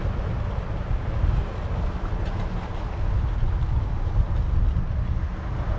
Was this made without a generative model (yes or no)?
yes